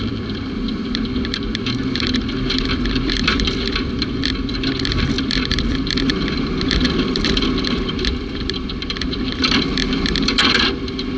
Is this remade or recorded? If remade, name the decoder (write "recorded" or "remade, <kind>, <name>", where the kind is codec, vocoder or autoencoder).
remade, vocoder, BigVGAN v2